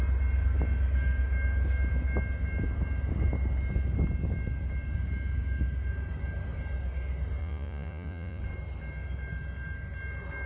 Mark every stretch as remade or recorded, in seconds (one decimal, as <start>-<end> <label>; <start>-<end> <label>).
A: 0.0-7.4 recorded; 7.4-8.4 remade; 8.4-10.5 recorded